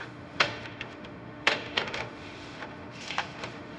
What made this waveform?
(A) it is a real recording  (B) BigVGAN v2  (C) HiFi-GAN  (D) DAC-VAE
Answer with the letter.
D